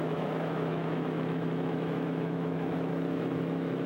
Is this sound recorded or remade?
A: remade